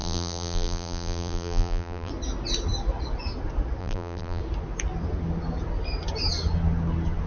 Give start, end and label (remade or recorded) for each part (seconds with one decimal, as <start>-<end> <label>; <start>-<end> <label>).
0.0-2.1 remade; 2.1-3.8 recorded; 3.8-4.4 remade; 4.4-7.3 recorded